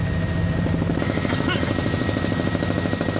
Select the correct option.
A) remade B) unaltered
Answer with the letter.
B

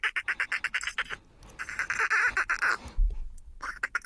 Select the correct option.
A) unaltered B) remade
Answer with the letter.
A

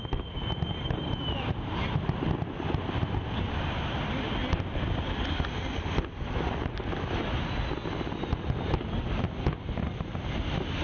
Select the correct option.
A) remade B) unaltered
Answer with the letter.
B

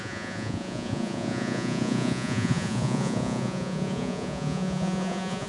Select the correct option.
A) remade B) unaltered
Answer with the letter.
A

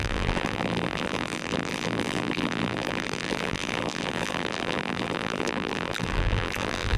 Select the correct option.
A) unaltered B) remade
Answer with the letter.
B